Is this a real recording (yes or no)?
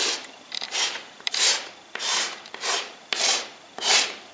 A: no